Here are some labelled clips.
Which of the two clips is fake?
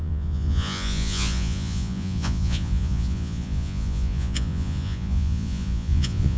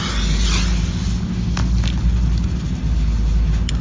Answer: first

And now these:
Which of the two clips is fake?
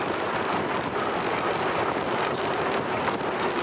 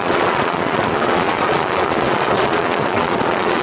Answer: second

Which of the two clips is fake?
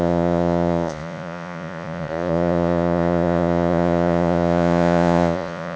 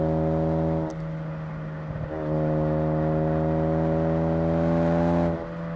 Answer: first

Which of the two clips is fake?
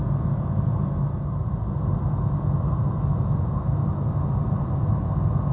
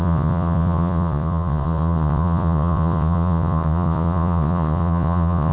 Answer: second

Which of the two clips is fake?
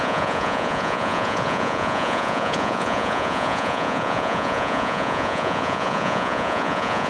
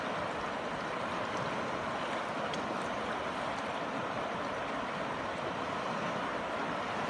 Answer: first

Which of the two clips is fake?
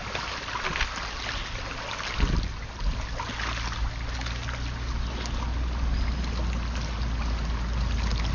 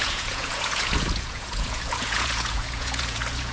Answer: second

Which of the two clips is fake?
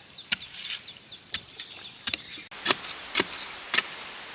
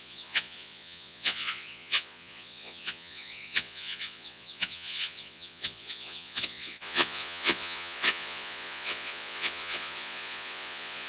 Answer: second